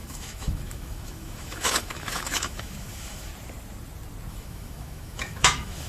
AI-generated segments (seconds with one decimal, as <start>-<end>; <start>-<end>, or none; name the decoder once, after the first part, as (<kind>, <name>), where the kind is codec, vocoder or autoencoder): 0.0-3.3 (autoencoder, DAC-VAE); 4.3-5.9